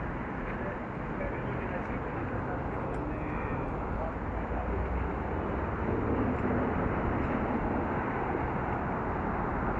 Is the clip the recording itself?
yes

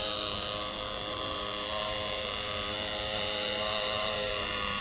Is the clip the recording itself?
no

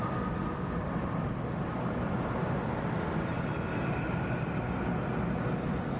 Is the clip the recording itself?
yes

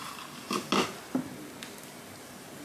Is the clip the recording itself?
yes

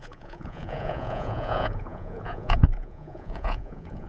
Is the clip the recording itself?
no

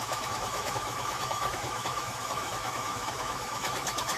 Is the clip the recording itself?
no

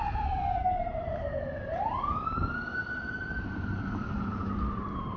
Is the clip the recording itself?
no